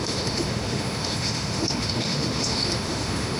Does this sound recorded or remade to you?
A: remade